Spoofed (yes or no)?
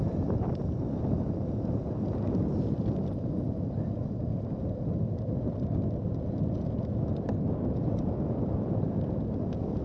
no